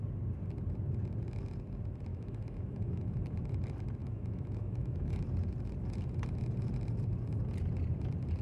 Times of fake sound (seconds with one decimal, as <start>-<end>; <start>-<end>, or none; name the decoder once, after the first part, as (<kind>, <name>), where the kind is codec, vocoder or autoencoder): 2.1-3.4 (autoencoder, DAC-VAE); 4.0-5.2